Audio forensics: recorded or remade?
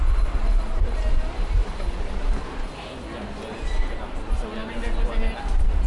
recorded